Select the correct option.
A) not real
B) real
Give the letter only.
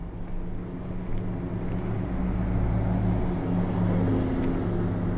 B